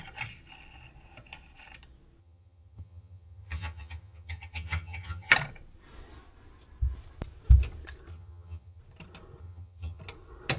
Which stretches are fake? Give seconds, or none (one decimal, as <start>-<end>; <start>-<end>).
2.2-5.3; 8.1-8.8; 9.4-10.0